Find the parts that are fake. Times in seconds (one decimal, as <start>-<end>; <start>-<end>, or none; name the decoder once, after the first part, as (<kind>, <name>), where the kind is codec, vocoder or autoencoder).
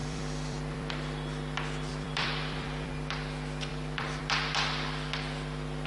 0.0-0.9 (vocoder, BigVGAN v2); 1.9-2.9; 3.7-4.2